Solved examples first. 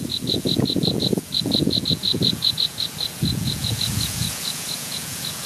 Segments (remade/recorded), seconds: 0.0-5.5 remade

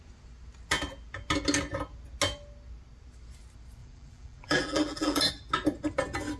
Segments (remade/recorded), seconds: 0.0-3.8 recorded; 3.8-5.3 remade; 5.3-6.4 recorded